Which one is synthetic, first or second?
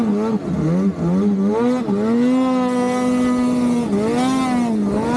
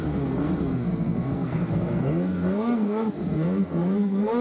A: second